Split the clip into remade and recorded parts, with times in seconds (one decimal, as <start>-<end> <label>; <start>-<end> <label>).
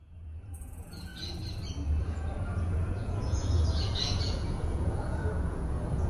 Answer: 0.0-1.1 remade; 1.1-2.0 recorded; 2.0-6.1 remade